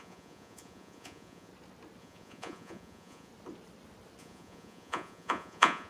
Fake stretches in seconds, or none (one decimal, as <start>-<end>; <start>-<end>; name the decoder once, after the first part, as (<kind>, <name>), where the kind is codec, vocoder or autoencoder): 0.0-1.5 (vocoder, Vocos); 2.0-3.3; 4.2-5.9